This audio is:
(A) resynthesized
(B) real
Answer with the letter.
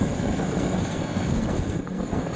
A